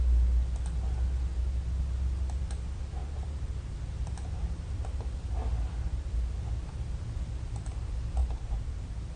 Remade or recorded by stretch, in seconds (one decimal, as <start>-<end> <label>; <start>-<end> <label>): 0.0-3.0 recorded; 3.0-3.8 remade; 3.8-8.2 recorded; 8.2-9.2 remade